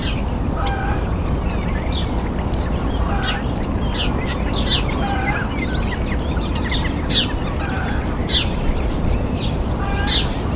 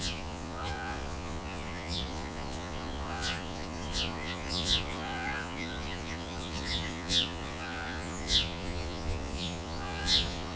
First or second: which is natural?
first